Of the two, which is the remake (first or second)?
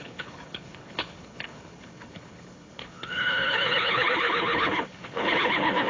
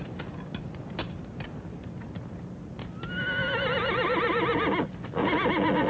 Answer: first